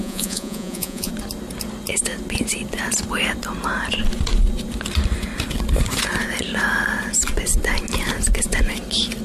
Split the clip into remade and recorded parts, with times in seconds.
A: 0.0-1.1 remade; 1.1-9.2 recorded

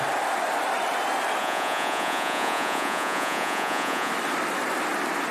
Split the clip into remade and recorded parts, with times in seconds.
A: 0.0-1.4 recorded; 1.4-4.1 remade; 4.1-5.3 recorded